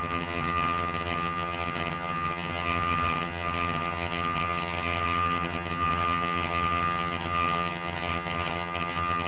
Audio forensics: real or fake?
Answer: fake